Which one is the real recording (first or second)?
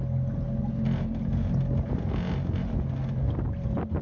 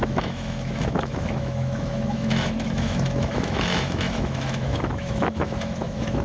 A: first